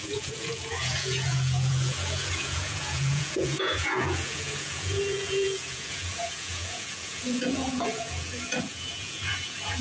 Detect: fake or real fake